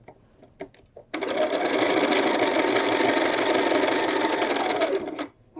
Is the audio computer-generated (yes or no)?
no